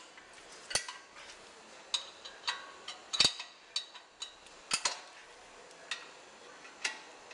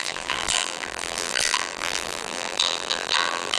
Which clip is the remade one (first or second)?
second